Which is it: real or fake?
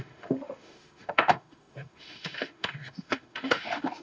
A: fake